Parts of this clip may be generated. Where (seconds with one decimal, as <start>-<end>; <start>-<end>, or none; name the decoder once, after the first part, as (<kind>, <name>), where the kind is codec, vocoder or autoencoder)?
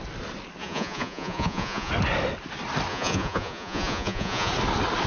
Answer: 0.6-1.9 (vocoder, Vocos); 2.9-4.5